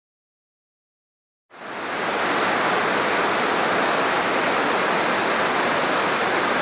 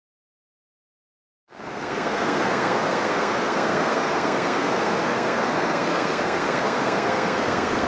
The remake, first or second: second